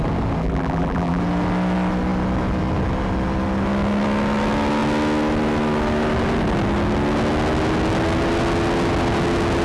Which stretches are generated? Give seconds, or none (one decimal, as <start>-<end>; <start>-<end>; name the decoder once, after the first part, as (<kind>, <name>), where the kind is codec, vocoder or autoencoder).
0.4-1.2 (vocoder, BigVGAN v2)